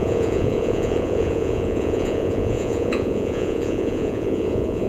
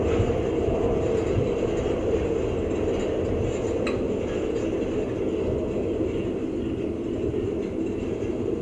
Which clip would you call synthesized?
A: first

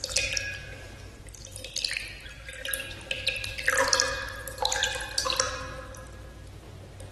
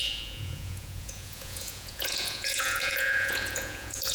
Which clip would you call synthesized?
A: second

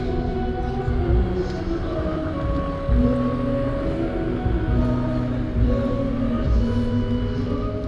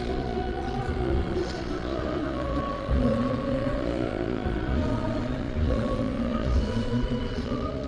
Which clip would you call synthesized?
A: second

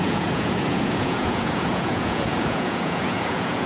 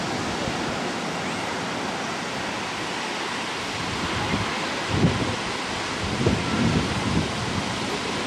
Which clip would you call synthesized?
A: first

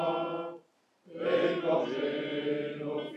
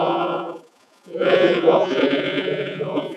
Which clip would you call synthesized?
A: second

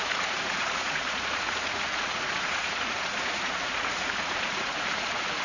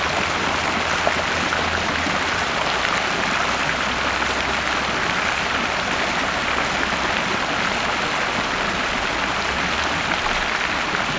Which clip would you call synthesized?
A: first